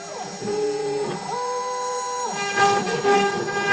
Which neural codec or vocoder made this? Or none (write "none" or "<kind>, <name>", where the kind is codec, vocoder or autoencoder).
vocoder, BigVGAN v2